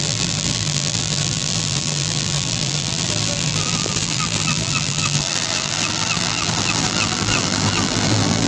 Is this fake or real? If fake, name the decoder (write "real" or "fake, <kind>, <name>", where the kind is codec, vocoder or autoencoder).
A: fake, vocoder, BigVGAN v2